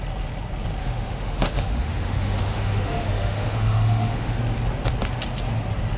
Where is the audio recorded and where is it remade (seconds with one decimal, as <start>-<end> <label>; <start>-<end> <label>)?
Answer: 0.0-0.8 recorded; 0.8-4.4 remade; 4.4-6.0 recorded